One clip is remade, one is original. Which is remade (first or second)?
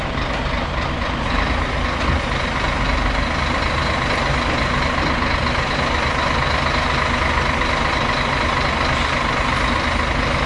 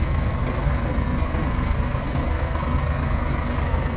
second